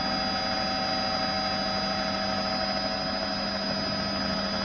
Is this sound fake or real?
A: real